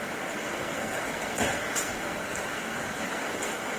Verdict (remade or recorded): remade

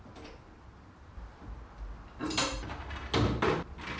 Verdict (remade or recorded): recorded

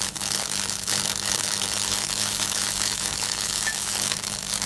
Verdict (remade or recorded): remade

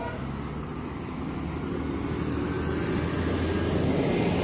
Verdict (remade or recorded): recorded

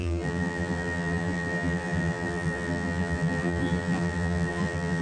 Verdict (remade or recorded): remade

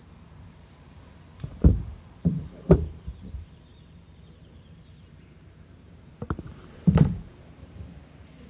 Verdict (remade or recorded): remade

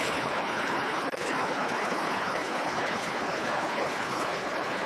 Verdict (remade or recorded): remade